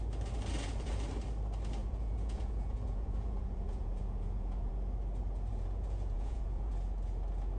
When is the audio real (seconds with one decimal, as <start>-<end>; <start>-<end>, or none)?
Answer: 0.0-1.8; 4.7-5.5; 6.7-7.6